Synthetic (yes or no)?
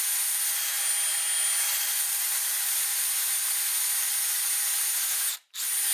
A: no